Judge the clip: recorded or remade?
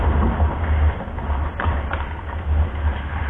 recorded